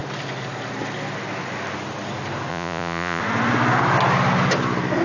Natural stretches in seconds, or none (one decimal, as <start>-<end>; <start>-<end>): 0.0-2.5; 3.2-5.0